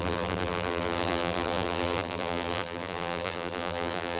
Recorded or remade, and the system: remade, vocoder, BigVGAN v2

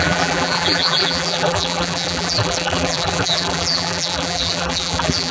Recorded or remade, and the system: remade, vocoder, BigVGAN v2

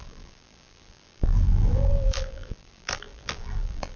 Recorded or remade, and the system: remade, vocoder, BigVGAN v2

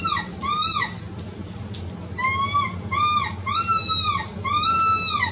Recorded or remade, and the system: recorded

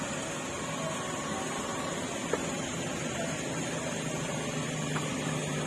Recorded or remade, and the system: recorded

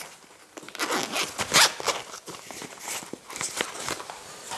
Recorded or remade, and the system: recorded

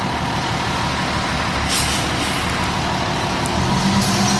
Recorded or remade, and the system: recorded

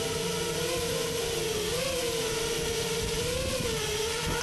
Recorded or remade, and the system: recorded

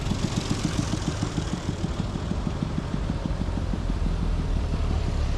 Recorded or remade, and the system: remade, vocoder, BigVGAN v2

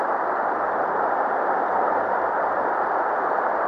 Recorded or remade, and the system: remade, vocoder, BigVGAN v2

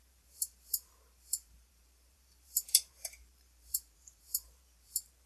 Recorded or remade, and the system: remade, vocoder, BigVGAN v2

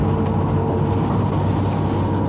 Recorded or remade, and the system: recorded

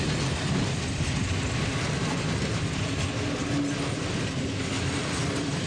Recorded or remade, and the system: recorded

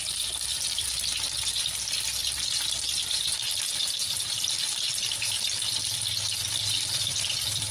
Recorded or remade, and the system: remade, vocoder, BigVGAN v2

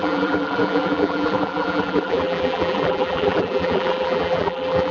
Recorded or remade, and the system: remade, vocoder, BigVGAN v2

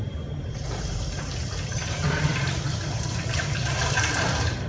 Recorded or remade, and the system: remade, vocoder, BigVGAN v2